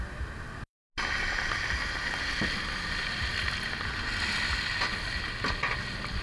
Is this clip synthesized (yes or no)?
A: no